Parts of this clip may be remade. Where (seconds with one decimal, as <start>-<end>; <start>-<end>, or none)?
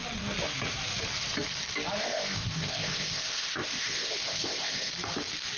2.0-4.9